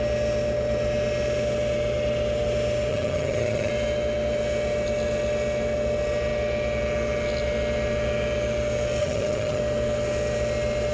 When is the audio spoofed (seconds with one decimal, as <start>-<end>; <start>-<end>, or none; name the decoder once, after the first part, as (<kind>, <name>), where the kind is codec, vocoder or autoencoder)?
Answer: 2.9-3.7 (vocoder, HiFi-GAN); 9.0-9.6